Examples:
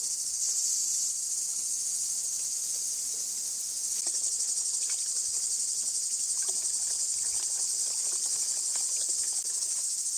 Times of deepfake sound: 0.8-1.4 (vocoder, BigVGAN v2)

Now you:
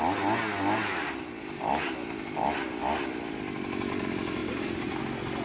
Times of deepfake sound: 4.4-5.0 (vocoder, BigVGAN v2)

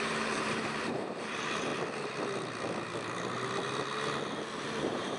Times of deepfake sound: 0.0-1.7 (vocoder, BigVGAN v2); 4.8-5.2